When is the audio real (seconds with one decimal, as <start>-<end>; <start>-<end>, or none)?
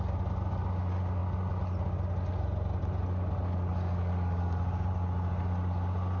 0.0-6.2